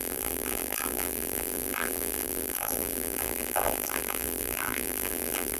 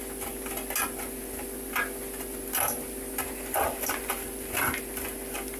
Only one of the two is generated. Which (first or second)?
first